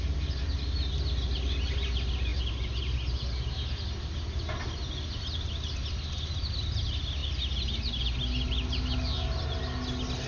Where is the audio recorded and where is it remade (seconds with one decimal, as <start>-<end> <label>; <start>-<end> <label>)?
0.0-10.3 recorded